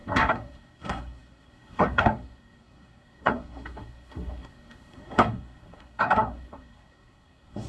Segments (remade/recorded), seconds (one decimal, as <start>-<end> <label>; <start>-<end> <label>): 0.0-7.7 remade